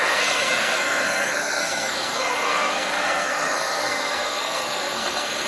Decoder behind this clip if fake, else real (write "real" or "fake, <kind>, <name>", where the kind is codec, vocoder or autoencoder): fake, codec, SNAC